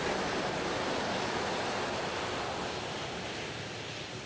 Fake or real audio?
real